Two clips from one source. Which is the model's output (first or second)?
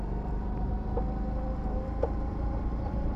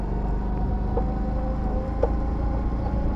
first